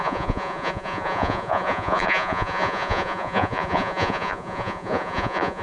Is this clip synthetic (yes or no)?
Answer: yes